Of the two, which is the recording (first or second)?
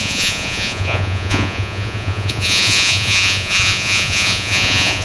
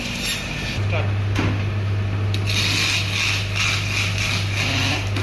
second